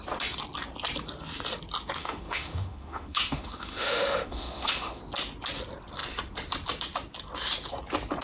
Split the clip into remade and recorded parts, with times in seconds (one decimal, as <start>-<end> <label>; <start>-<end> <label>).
0.0-2.0 recorded; 2.0-5.0 remade; 5.0-8.2 recorded